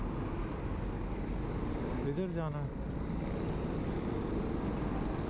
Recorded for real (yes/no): yes